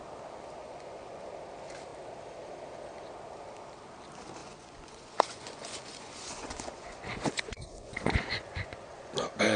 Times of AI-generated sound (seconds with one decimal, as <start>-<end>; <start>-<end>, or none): 0.6-1.3; 4.4-9.1